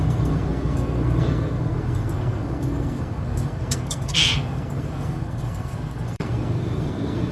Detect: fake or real fake